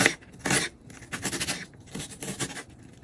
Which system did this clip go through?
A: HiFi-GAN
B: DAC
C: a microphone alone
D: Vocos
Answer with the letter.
C